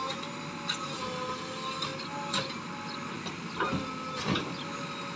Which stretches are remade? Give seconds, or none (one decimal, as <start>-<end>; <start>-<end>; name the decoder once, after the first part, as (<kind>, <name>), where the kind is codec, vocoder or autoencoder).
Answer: none